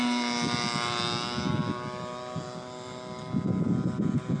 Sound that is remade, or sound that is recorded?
recorded